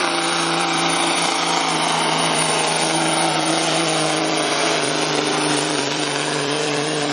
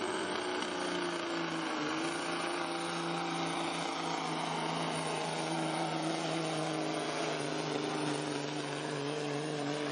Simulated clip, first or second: first